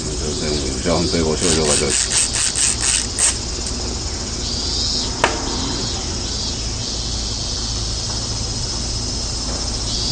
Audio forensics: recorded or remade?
recorded